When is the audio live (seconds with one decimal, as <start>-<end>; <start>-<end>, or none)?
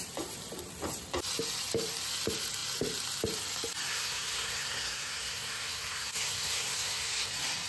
0.0-3.9; 7.3-7.7